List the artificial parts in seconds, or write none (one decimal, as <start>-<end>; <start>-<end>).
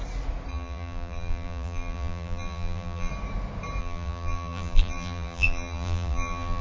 0.5-3.1; 3.8-6.6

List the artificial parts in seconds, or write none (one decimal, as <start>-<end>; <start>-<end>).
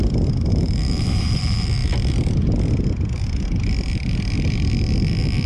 0.5-1.4